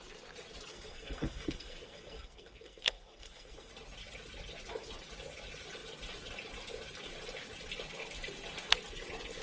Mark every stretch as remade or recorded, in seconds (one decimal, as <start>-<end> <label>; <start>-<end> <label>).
0.0-0.7 recorded; 0.7-3.7 remade; 3.7-9.4 recorded